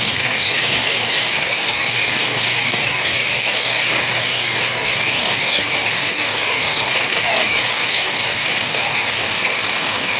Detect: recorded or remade remade